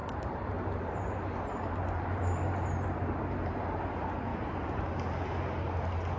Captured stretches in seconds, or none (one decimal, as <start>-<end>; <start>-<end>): 3.5-4.3; 4.8-6.2